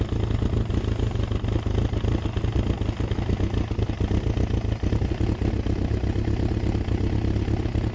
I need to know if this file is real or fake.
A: real